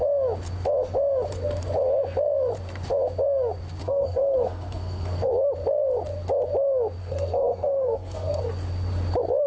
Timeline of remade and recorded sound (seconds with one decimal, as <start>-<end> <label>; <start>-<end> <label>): 0.0-3.8 recorded; 3.8-5.3 remade; 5.3-7.0 recorded; 7.0-8.4 remade; 8.4-9.5 recorded